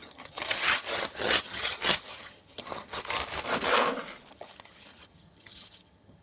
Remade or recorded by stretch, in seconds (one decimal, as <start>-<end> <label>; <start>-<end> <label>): 0.0-3.2 remade; 3.2-4.3 recorded; 4.3-6.2 remade